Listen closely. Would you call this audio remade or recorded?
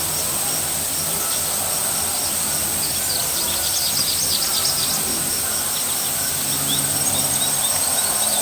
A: recorded